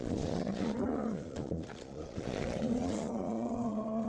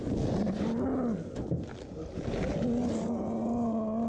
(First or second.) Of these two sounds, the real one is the second